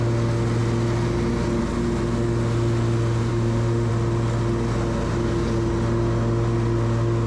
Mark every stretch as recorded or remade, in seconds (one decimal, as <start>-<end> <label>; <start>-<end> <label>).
0.0-3.3 recorded; 3.3-3.9 remade; 3.9-7.3 recorded